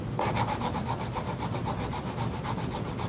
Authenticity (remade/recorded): recorded